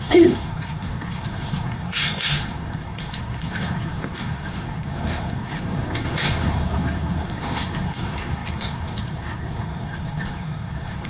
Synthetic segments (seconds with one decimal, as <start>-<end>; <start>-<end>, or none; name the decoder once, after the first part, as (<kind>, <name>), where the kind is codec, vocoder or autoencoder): 0.0-11.1 (codec, SNAC)